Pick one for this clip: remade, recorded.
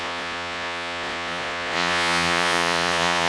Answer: remade